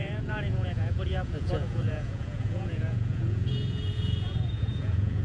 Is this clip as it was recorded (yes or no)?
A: no